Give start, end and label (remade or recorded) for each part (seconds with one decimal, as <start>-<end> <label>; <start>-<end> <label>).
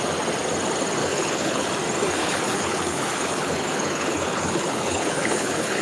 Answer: 0.0-1.0 recorded; 1.0-1.7 remade; 1.7-2.2 recorded; 2.2-5.8 remade